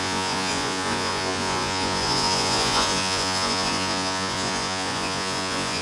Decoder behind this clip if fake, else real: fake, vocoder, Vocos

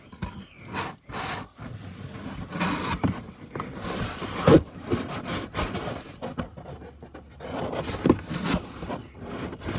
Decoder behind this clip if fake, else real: real